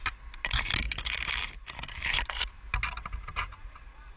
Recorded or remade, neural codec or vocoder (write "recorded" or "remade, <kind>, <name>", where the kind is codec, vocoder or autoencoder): recorded